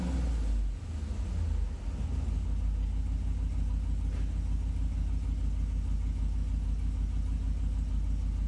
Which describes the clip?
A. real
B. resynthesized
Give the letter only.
A